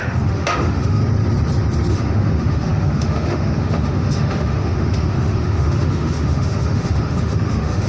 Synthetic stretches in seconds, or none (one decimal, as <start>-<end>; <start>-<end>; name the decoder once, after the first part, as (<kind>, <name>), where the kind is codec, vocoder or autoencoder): 0.0-1.0 (autoencoder, DAC-VAE); 1.9-7.9